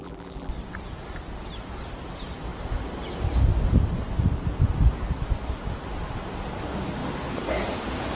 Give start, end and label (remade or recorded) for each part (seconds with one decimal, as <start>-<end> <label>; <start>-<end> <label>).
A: 0.0-0.5 remade; 0.5-8.1 recorded